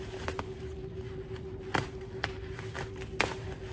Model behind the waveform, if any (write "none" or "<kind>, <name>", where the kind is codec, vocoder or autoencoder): none